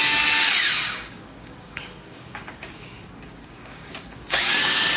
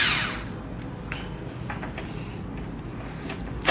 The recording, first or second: second